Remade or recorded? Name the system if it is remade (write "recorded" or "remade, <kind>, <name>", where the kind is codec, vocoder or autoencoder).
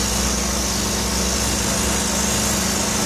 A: recorded